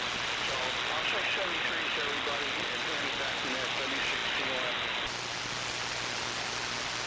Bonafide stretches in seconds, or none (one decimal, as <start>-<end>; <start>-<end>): 0.0-7.1